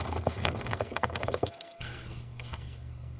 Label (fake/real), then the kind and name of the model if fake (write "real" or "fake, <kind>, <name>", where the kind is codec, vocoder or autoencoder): fake, codec, SNAC